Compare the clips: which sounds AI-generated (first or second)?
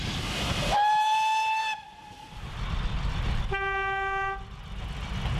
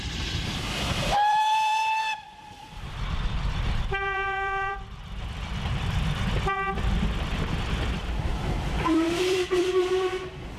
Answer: second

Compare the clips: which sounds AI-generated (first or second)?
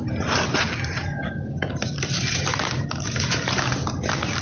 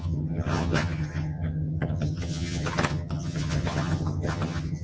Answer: second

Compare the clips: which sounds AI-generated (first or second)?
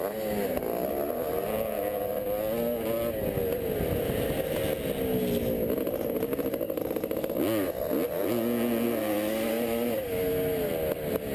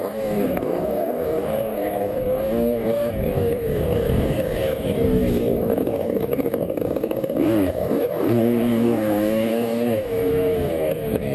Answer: second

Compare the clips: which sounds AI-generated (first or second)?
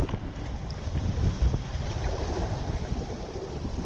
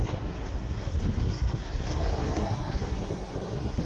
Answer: second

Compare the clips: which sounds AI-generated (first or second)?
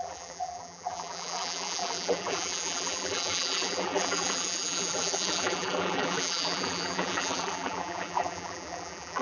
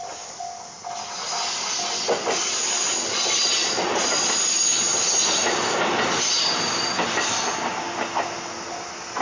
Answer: first